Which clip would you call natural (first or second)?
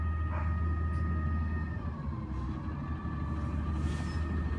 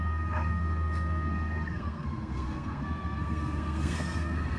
first